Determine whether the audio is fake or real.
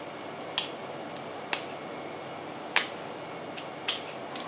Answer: real